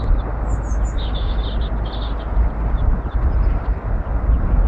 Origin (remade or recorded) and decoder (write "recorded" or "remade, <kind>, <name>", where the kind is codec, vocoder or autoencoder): recorded